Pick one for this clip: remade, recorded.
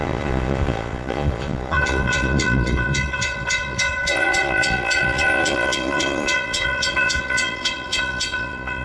remade